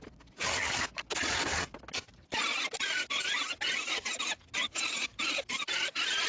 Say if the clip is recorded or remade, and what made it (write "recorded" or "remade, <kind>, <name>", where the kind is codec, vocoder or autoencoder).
recorded